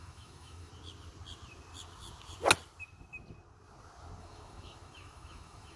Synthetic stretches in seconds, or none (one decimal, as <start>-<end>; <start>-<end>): 0.0-0.7; 4.2-5.8